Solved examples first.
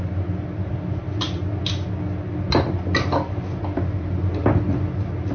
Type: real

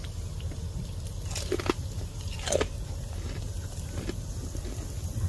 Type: real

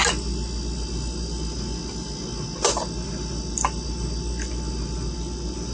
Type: real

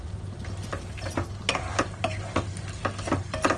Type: real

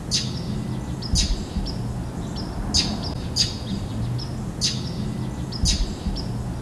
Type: real